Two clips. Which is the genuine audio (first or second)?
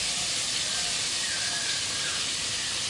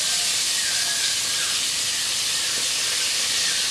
second